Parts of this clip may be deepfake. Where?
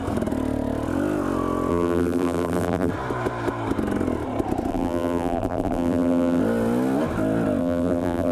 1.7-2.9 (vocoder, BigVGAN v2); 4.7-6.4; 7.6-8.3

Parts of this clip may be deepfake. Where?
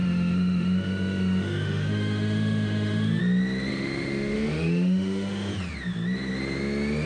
0.0-3.2 (autoencoder, DAC-VAE); 3.7-5.5